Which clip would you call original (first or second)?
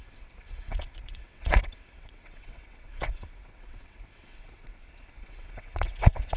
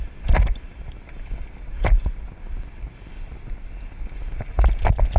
second